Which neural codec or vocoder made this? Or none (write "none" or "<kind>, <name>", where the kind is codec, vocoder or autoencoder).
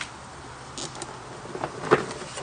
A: none